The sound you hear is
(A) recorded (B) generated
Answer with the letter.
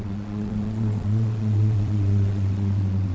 B